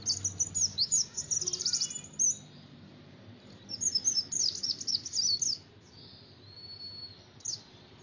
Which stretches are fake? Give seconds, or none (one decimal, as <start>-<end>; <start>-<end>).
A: 0.7-1.2